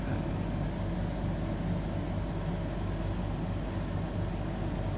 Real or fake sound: real